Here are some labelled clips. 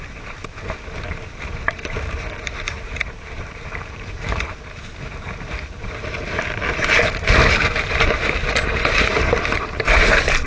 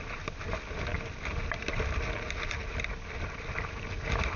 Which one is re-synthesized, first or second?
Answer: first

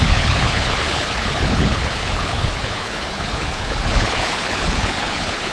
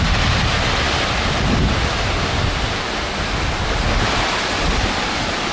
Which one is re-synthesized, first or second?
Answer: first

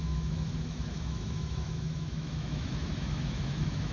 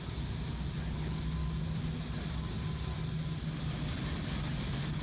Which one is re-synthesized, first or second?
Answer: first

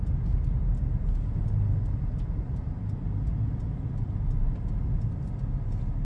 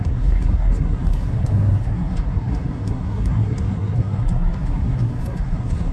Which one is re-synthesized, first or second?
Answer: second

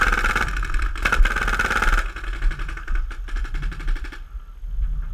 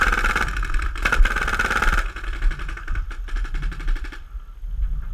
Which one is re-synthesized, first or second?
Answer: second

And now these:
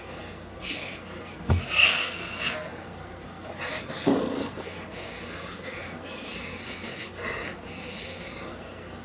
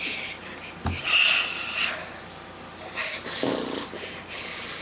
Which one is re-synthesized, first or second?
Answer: first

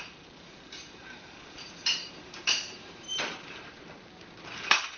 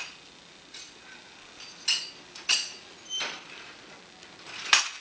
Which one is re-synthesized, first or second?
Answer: first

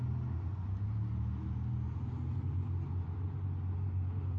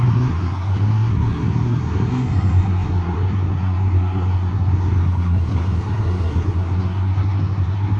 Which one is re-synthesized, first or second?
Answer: second